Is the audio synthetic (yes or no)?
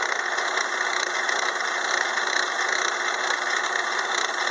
no